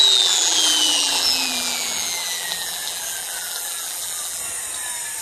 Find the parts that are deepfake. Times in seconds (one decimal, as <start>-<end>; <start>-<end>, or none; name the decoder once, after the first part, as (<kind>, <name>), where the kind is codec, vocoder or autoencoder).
0.0-4.4 (vocoder, BigVGAN v2)